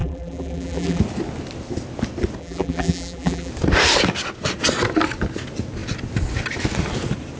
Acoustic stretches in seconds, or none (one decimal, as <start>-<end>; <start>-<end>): 1.0-2.4; 3.5-7.4